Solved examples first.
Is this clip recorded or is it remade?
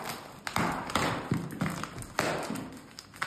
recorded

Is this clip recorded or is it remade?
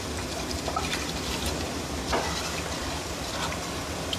remade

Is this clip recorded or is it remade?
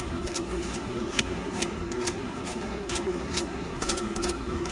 remade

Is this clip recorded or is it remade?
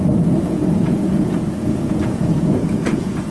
remade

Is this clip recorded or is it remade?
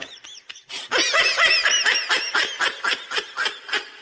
recorded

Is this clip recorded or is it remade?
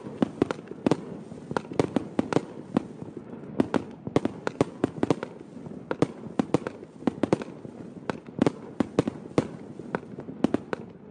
recorded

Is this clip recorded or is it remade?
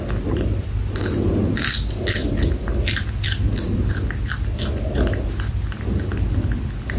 recorded